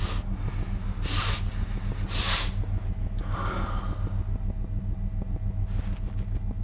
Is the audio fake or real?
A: real